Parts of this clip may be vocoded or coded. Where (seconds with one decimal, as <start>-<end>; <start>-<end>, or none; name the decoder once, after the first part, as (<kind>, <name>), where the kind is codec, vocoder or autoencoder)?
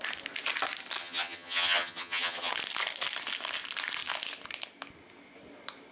1.0-2.5 (vocoder, HiFi-GAN)